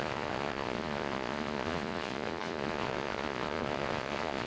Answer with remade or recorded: remade